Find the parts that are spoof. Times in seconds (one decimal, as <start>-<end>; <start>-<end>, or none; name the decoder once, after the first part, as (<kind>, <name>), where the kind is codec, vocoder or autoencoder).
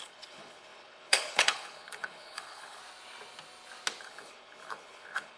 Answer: 0.0-2.8 (codec, HILCodec); 4.0-5.4